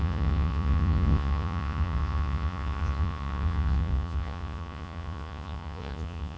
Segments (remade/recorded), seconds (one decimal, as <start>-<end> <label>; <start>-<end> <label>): 0.0-6.4 remade